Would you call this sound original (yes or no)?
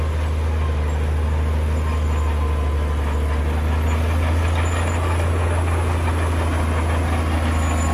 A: yes